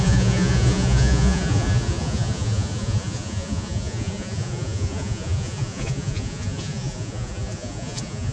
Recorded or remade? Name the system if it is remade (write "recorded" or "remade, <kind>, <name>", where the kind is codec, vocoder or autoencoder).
remade, vocoder, Vocos